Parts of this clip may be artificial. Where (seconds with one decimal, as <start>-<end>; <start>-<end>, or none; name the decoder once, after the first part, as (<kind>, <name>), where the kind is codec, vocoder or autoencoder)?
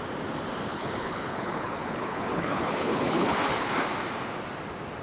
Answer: 0.7-3.7 (codec, HILCodec)